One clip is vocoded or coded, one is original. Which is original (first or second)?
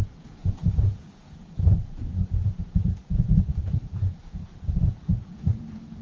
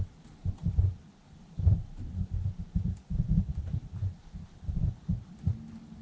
second